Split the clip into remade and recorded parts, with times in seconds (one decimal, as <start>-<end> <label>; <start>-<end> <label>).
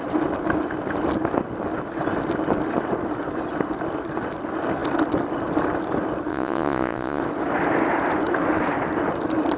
0.0-6.3 recorded; 6.3-7.2 remade; 7.2-9.6 recorded